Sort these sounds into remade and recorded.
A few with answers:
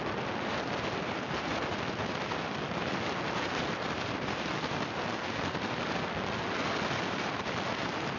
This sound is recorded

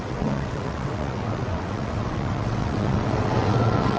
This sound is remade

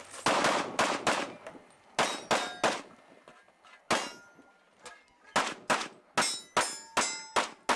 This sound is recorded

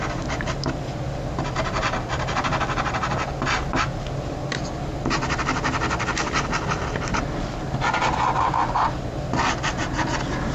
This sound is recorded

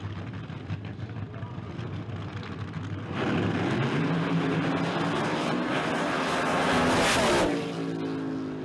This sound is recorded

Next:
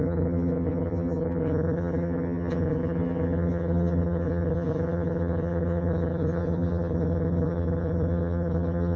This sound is remade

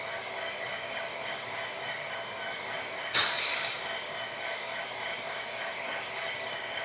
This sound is remade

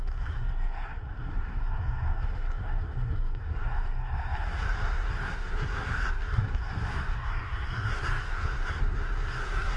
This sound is remade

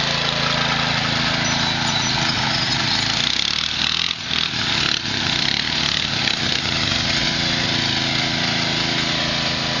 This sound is recorded